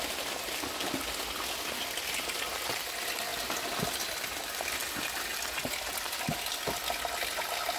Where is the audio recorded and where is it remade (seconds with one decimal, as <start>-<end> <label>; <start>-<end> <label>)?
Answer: 0.0-7.8 recorded